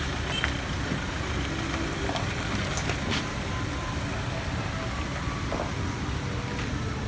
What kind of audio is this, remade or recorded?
recorded